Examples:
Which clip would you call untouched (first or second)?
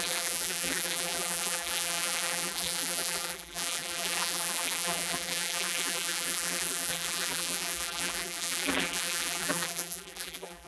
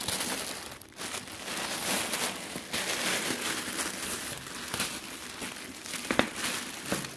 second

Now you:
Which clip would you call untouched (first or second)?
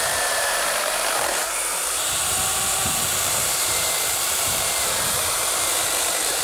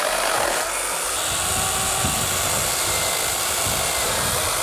second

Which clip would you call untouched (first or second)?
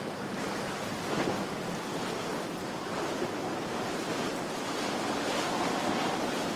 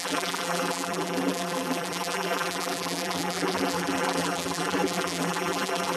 first